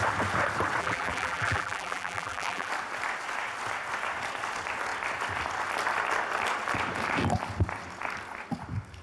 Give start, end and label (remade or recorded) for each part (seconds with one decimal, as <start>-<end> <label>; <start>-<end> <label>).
0.0-0.8 recorded; 0.8-2.7 remade; 2.7-9.0 recorded